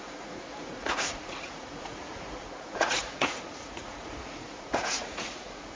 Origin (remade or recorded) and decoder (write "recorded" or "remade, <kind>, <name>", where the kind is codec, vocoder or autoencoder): remade, vocoder, Vocos